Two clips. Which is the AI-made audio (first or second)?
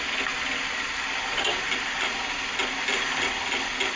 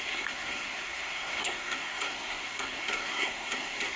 second